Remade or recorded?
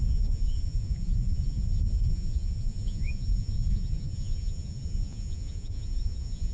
remade